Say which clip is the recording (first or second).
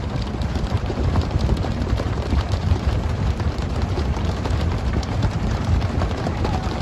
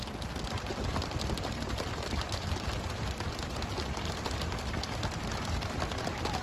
second